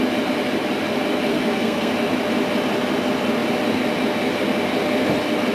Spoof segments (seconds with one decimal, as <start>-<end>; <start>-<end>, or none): 1.3-1.9